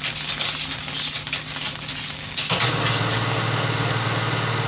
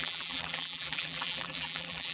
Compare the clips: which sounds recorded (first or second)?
first